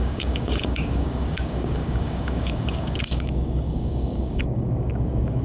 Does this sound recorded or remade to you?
remade